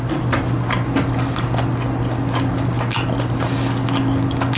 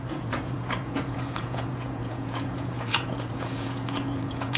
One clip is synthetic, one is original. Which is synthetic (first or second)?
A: second